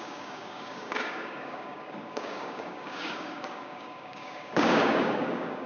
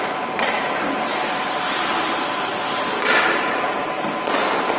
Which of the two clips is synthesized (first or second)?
first